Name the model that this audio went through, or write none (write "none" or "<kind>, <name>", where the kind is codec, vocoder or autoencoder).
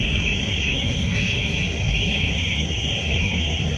codec, SNAC